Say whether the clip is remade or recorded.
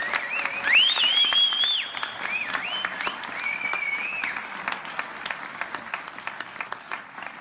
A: recorded